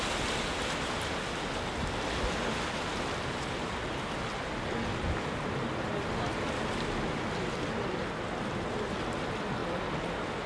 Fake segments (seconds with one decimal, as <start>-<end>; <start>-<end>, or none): none